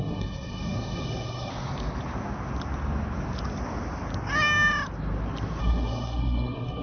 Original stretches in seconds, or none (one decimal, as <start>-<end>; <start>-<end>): 1.5-5.6